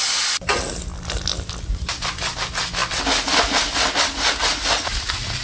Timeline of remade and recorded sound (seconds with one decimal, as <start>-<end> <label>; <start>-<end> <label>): 0.0-5.4 recorded